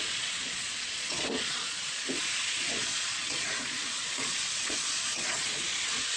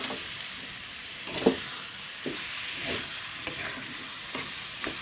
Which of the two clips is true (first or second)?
second